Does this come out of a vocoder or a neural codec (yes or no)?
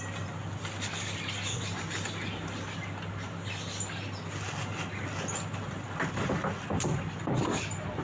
no